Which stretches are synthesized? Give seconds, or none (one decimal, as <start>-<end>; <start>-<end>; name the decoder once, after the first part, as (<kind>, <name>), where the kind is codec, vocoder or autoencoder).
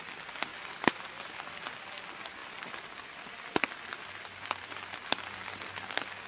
0.5-1.5 (vocoder, BigVGAN v2)